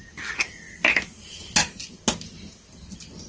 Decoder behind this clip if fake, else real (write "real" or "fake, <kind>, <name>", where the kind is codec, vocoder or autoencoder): real